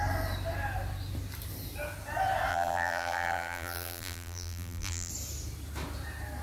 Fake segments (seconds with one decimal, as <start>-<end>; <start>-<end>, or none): 2.5-5.1

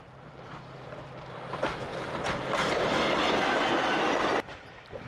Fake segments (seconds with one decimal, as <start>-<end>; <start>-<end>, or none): 0.0-5.1

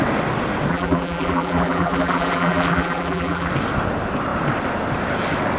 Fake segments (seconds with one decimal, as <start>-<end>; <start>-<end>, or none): 0.7-3.5

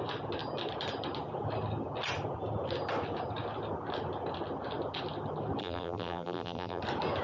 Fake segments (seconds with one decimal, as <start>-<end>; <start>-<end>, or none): 5.6-6.8

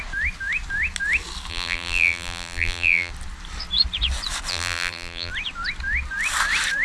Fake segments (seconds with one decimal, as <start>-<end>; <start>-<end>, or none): 1.5-3.1; 4.5-5.3

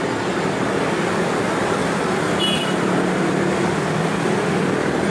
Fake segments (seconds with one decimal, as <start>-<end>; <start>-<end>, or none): 1.8-4.4

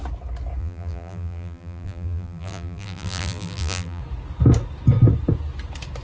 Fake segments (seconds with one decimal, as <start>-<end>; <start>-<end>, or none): 0.6-4.0